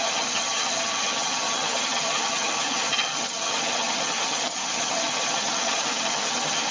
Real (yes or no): no